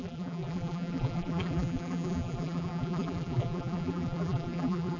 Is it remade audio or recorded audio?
remade